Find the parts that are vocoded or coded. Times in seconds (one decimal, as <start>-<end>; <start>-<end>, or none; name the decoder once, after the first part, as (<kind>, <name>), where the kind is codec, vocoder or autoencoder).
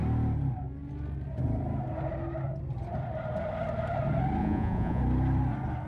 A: 4.4-5.0 (vocoder, Vocos)